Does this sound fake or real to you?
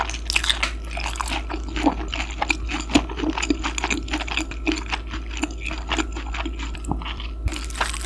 real